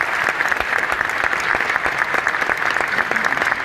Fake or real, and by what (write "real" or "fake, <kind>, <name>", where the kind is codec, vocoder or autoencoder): real